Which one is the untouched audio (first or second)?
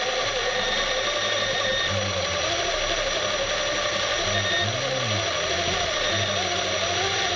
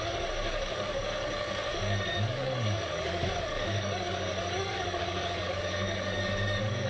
first